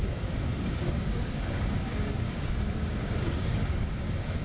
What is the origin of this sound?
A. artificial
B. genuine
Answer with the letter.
A